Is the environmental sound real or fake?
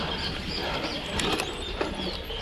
real